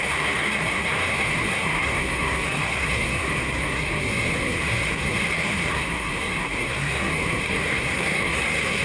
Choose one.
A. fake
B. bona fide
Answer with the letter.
A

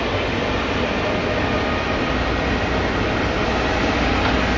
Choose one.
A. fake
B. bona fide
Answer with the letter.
B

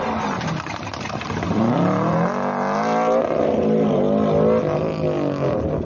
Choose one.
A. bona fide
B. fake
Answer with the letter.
A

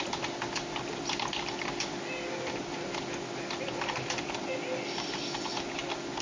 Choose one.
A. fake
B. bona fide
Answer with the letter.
B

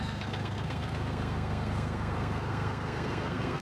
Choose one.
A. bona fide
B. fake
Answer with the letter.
B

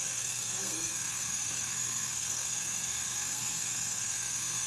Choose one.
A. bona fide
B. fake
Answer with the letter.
B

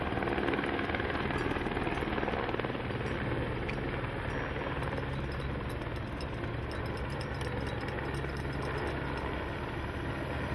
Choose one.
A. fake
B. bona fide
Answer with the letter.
B